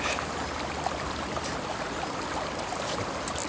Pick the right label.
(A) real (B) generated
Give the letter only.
A